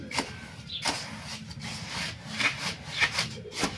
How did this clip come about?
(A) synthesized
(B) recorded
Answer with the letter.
B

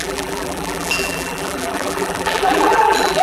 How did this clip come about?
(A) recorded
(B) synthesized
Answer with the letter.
B